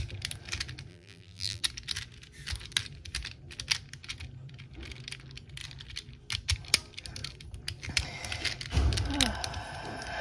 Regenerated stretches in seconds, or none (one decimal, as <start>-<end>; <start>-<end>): 0.9-1.6